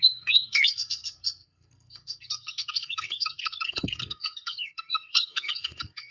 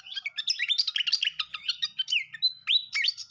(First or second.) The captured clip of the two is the second